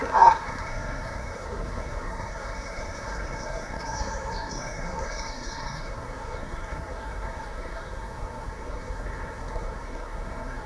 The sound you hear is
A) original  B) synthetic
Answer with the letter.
B